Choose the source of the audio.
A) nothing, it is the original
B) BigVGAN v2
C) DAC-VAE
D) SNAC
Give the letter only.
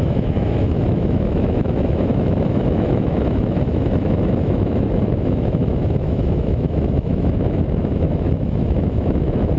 C